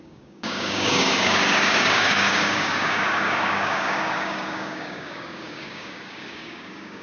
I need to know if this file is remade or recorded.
remade